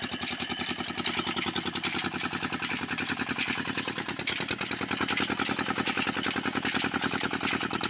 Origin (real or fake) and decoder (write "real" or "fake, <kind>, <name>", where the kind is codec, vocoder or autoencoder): real